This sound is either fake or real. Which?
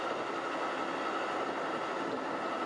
real